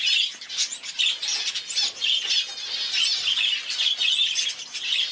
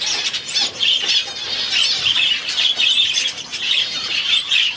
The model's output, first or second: second